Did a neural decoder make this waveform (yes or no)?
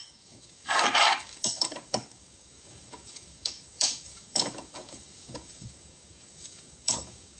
yes